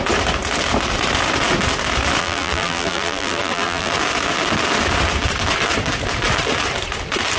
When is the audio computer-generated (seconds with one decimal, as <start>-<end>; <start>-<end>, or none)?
2.2-3.9